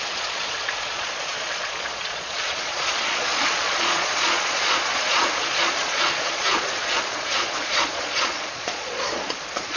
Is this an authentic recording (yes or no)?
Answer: no